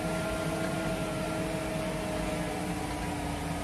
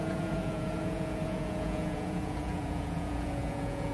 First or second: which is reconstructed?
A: second